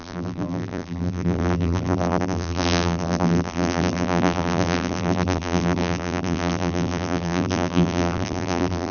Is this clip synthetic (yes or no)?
yes